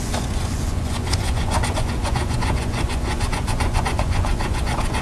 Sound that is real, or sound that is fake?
fake